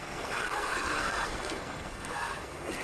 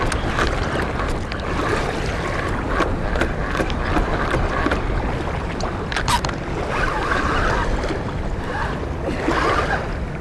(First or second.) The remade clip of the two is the first